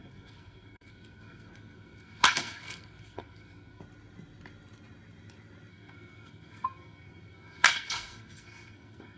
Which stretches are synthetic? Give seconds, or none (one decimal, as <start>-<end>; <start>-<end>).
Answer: 0.0-3.8; 5.7-9.2